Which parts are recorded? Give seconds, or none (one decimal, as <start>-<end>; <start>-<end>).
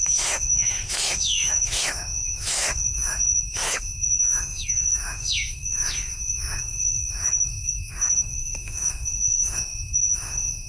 none